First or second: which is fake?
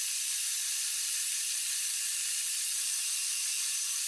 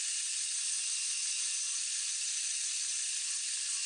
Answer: first